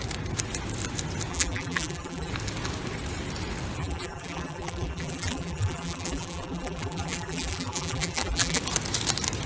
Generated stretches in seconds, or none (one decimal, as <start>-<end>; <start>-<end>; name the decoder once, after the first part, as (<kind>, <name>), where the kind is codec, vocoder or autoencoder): 1.3-2.3 (vocoder, BigVGAN v2); 3.8-8.6